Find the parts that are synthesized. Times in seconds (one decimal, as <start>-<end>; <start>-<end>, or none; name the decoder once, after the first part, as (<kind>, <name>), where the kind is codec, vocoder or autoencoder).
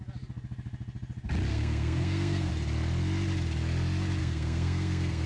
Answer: 1.5-2.5 (codec, SNAC); 4.2-5.3